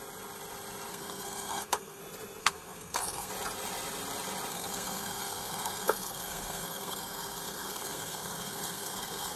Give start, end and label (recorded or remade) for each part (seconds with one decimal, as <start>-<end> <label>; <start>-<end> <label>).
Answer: 0.0-0.9 recorded; 0.9-2.0 remade; 2.0-2.4 recorded; 2.4-3.3 remade; 3.3-4.5 recorded; 4.5-9.4 remade